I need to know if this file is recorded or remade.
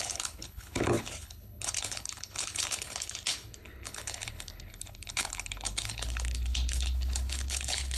remade